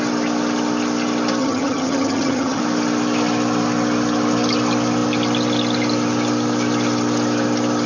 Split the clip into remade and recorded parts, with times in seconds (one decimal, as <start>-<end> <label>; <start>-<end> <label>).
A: 0.0-1.4 recorded; 1.4-2.6 remade; 2.6-7.9 recorded